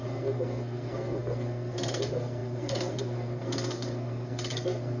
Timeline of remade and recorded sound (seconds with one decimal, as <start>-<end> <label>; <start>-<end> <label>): 0.0-5.0 remade